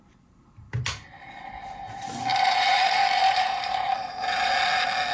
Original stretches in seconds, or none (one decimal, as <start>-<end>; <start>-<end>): 0.0-2.3; 4.5-5.1